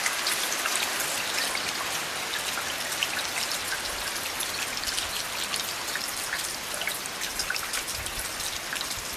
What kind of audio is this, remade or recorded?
remade